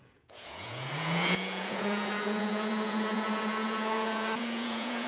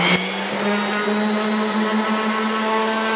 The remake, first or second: first